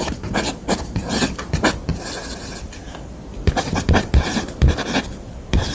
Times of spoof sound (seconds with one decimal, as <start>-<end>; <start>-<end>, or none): 0.0-1.9; 5.2-5.7